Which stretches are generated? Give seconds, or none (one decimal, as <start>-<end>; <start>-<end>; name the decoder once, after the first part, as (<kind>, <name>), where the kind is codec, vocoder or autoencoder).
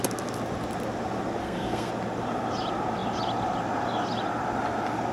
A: 1.4-1.9 (codec, SNAC)